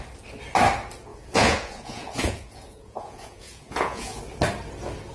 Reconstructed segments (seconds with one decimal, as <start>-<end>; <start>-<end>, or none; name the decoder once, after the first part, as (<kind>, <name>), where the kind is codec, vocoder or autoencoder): 1.1-4.2 (vocoder, Vocos)